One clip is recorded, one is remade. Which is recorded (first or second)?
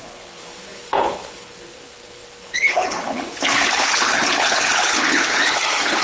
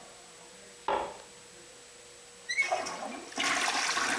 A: second